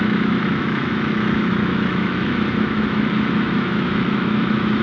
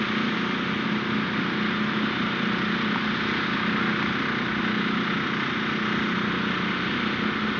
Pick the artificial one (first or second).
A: first